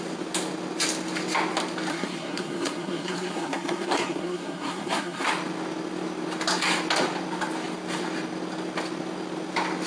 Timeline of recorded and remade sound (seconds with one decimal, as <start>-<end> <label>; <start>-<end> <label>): 0.0-1.9 recorded; 1.9-5.3 remade; 5.3-9.9 recorded